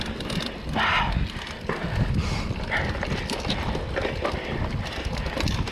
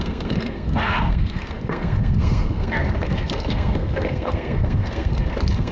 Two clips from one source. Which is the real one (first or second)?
first